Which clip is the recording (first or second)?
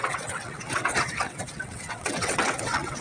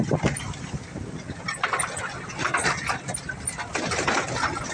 second